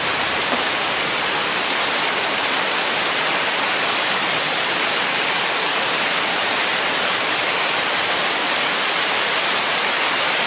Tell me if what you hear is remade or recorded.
remade